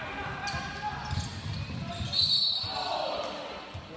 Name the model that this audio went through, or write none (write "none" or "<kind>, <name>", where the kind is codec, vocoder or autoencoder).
none